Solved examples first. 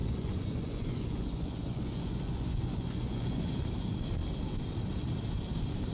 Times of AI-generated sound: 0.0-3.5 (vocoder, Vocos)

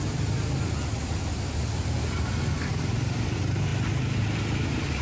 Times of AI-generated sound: none

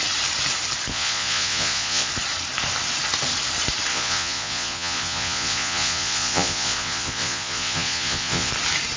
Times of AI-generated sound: 0.9-2.1 (vocoder, Vocos); 3.9-8.5

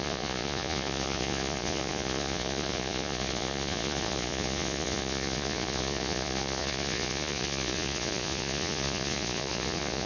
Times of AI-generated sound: 0.0-10.1 (vocoder, Vocos)